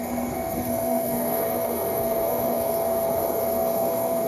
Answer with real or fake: fake